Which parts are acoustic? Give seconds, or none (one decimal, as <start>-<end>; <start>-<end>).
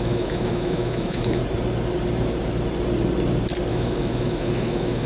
1.4-3.7